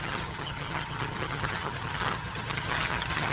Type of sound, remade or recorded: remade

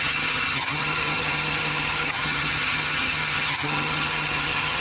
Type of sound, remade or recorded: remade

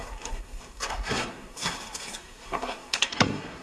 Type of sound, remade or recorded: remade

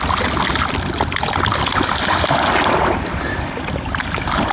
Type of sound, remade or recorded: recorded